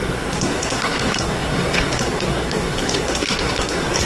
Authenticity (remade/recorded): remade